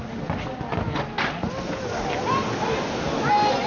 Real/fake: real